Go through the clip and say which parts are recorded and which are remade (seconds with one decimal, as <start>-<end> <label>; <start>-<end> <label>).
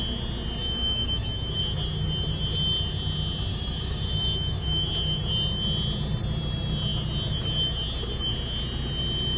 0.0-0.6 recorded; 0.6-1.6 remade; 1.6-3.5 recorded; 3.5-4.9 remade; 4.9-9.4 recorded